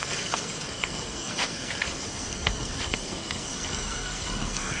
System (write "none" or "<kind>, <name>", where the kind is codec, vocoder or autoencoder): codec, SNAC